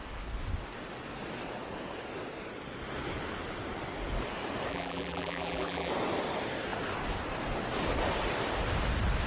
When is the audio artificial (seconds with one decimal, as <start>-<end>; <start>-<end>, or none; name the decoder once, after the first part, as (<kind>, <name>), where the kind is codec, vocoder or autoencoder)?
4.7-5.9 (vocoder, BigVGAN v2)